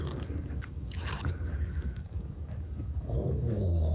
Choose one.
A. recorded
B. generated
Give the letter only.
B